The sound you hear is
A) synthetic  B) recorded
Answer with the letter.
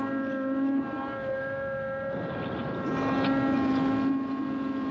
B